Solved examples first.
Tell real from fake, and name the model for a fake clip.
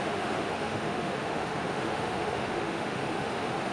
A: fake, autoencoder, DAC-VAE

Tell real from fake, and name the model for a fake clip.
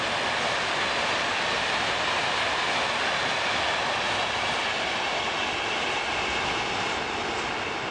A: real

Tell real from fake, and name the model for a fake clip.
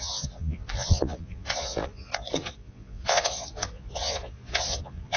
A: fake, vocoder, Vocos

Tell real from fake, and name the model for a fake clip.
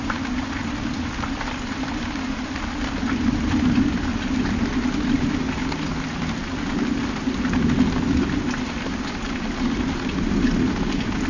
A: real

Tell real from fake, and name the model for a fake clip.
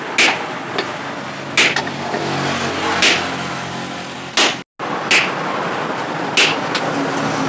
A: real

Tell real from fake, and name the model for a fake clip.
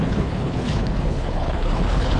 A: fake, codec, HILCodec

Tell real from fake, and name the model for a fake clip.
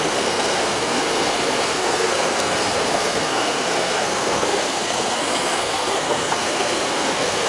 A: fake, codec, SNAC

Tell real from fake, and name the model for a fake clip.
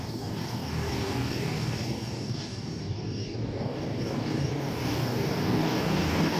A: fake, codec, DAC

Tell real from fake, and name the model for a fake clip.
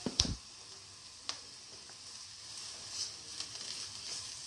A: real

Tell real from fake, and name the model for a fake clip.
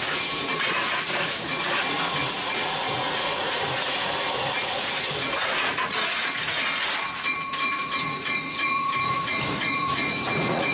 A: fake, vocoder, Vocos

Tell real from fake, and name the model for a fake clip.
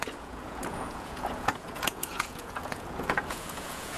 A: fake, vocoder, Vocos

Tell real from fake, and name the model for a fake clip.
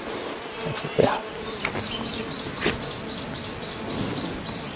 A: real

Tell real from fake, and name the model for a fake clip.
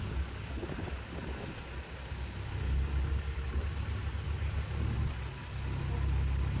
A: real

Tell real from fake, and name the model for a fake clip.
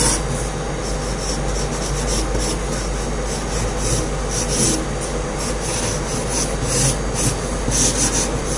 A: real